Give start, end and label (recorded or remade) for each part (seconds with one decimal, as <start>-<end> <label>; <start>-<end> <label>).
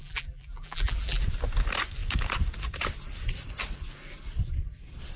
0.0-1.2 remade; 1.2-5.2 recorded